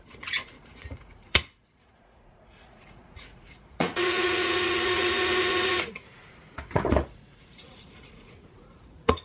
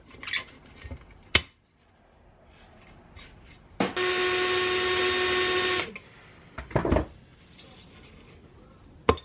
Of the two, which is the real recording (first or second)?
second